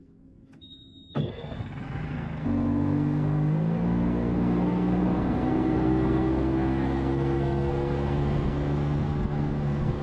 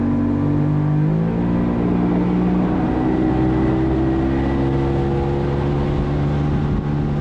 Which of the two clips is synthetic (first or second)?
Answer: first